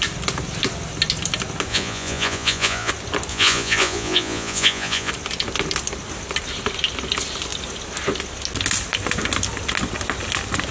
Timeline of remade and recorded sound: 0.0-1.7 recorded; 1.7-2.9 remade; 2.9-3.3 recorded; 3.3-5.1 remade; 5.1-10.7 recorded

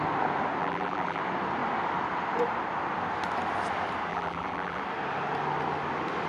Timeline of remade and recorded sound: 0.0-0.6 recorded; 0.6-1.2 remade; 1.2-4.1 recorded; 4.1-4.8 remade; 4.8-6.3 recorded